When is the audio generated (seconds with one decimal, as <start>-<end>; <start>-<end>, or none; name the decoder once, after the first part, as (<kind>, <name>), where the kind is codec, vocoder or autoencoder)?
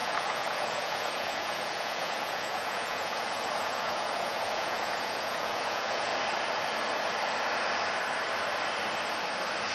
0.0-6.1 (vocoder, Vocos)